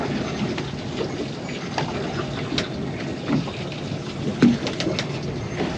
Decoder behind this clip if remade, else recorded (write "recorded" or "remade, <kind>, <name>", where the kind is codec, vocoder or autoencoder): recorded